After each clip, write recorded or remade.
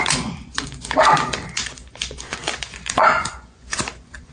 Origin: remade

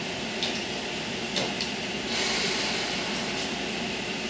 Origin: recorded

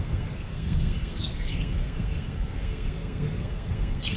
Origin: remade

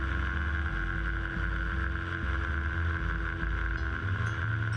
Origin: recorded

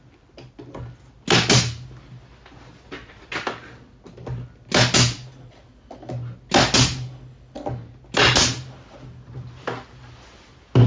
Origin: recorded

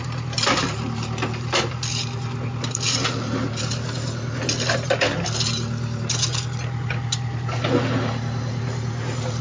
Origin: recorded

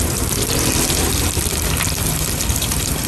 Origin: remade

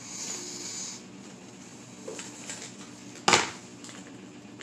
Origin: recorded